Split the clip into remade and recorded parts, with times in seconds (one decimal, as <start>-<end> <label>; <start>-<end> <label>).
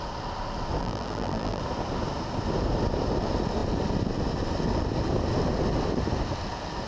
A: 0.0-0.8 recorded; 0.8-1.6 remade; 1.6-6.9 recorded